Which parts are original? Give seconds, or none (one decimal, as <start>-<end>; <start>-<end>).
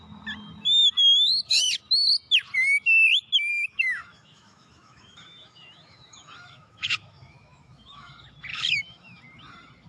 0.0-3.5; 8.1-8.5; 9.2-9.9